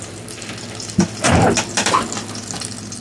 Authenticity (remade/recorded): recorded